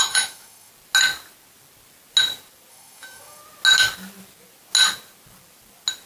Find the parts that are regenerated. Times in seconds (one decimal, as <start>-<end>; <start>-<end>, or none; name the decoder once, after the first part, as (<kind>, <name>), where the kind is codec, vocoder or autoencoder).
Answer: 0.0-0.7 (autoencoder, DAC-VAE); 2.7-3.4